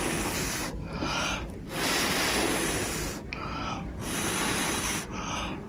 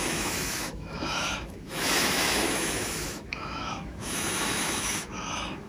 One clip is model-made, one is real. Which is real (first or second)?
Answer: first